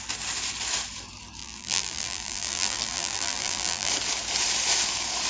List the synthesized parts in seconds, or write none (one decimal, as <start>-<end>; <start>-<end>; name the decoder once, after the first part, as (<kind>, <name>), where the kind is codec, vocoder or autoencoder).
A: 1.4-3.9 (vocoder, BigVGAN v2)